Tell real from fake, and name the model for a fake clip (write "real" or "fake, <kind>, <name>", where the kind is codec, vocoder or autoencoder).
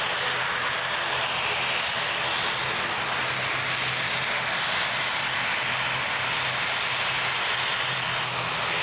real